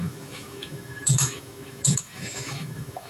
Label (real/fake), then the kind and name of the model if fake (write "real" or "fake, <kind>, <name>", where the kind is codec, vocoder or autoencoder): fake, autoencoder, DAC-VAE